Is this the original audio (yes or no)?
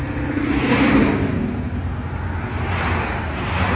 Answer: yes